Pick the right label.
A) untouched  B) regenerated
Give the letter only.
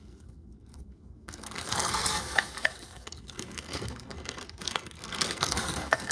B